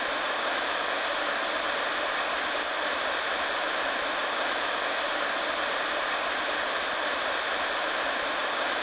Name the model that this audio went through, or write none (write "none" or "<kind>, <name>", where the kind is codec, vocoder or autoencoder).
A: none